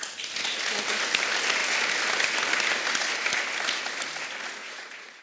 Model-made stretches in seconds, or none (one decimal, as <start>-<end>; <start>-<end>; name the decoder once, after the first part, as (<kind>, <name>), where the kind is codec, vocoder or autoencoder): 4.6-5.2 (vocoder, Vocos)